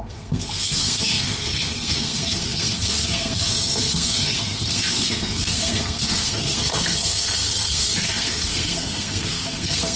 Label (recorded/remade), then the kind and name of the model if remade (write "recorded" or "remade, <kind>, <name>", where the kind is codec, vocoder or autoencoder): remade, codec, SNAC